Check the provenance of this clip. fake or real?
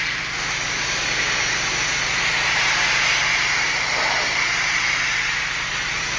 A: real